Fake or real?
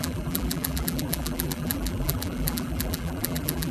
fake